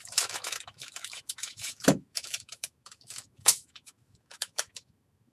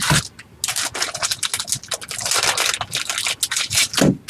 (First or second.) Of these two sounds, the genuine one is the second